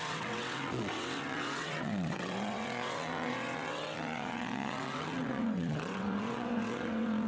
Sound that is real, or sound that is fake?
fake